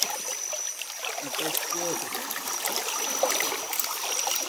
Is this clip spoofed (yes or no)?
yes